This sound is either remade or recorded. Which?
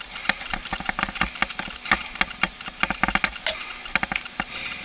recorded